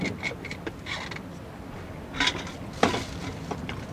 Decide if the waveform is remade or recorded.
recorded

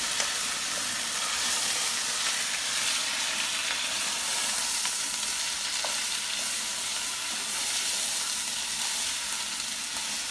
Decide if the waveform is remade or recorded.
recorded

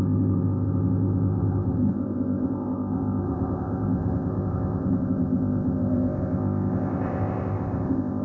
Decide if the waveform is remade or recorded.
remade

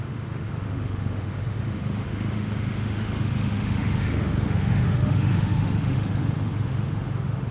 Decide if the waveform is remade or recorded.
remade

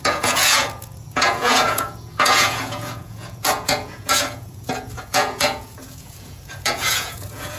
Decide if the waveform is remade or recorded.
remade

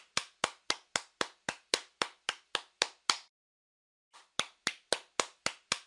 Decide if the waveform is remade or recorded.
recorded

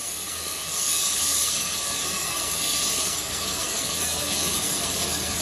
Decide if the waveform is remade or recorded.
remade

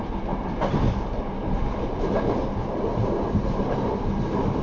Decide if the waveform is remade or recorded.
remade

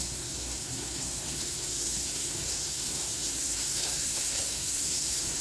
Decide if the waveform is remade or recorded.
remade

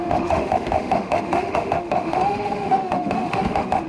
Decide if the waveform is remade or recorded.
remade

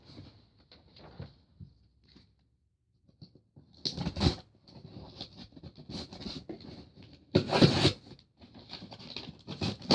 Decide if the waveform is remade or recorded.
recorded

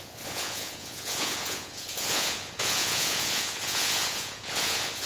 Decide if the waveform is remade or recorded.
remade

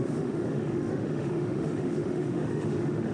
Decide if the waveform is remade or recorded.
remade